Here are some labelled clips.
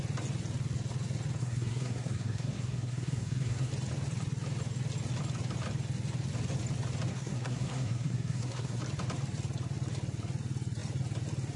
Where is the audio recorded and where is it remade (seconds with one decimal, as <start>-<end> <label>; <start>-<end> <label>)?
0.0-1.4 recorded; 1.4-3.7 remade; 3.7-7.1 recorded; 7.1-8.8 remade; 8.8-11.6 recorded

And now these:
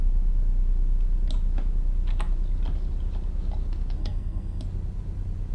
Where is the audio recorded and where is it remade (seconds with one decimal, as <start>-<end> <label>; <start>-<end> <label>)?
0.0-4.0 recorded; 4.0-4.6 remade; 4.6-5.5 recorded

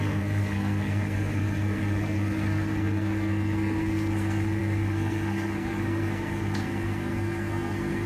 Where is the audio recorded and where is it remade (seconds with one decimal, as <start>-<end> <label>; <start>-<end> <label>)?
0.0-8.1 remade

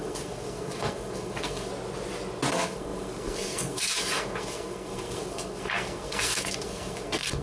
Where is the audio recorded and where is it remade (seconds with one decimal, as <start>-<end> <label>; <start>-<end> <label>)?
0.0-1.7 remade; 1.7-2.5 recorded; 2.5-7.4 remade

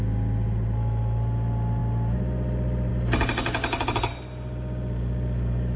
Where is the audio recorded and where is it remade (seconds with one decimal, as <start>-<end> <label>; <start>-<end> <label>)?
0.0-5.8 recorded